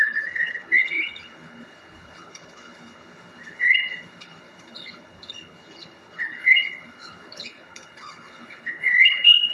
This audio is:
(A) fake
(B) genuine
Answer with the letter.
A